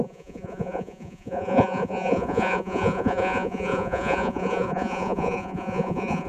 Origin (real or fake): fake